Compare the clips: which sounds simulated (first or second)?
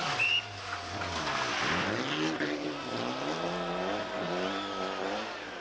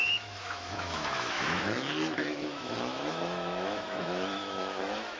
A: second